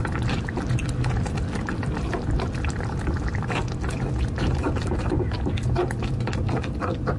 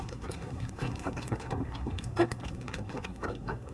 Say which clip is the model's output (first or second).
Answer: second